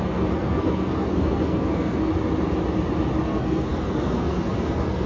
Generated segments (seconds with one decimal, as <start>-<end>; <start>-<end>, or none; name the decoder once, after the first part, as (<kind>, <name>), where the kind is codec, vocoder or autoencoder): 0.0-2.1 (codec, SNAC); 3.2-5.1